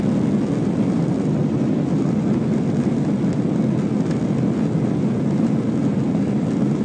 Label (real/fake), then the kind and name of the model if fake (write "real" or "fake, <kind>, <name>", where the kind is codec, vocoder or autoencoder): real